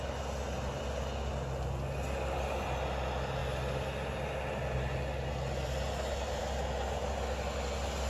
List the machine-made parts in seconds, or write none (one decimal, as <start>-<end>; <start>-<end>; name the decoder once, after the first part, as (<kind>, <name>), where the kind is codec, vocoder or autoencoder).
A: none

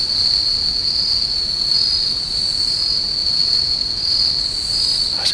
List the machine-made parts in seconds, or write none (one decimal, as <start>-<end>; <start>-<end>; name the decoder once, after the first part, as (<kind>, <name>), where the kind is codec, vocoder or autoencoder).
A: none